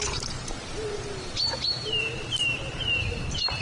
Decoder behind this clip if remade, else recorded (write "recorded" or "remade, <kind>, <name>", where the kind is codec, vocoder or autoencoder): remade, vocoder, BigVGAN v2